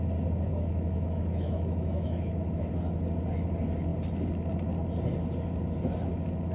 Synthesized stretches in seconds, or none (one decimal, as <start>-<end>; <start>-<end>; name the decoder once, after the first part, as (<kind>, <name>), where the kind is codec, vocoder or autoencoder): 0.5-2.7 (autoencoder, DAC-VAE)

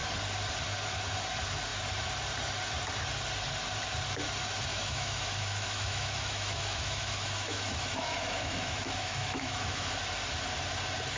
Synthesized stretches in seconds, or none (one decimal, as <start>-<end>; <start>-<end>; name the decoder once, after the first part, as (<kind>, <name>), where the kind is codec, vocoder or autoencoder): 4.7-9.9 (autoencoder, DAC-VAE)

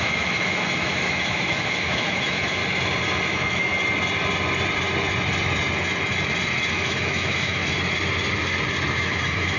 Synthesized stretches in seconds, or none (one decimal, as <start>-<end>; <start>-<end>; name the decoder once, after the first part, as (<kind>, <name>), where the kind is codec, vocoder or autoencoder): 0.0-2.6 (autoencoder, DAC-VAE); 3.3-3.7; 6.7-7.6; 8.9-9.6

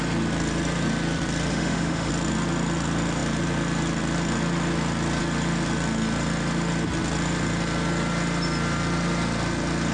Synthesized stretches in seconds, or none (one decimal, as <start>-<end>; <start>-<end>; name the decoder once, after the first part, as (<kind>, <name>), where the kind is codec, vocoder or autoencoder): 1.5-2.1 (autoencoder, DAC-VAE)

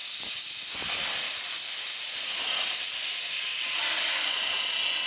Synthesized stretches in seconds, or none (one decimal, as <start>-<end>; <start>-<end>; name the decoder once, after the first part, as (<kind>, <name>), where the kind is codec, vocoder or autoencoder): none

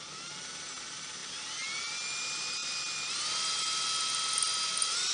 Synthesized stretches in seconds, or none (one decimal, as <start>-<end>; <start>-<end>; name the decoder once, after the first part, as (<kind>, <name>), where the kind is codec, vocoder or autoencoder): none

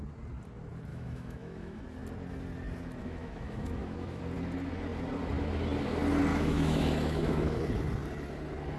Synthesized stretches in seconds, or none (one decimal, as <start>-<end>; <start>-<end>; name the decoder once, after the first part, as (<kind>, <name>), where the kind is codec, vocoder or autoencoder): 0.9-1.8 (autoencoder, DAC-VAE); 3.0-4.2; 6.3-7.6

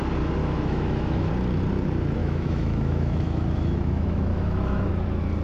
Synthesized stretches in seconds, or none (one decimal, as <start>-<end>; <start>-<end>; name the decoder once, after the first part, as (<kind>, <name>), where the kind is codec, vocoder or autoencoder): 0.4-1.3 (autoencoder, DAC-VAE); 2.2-4.9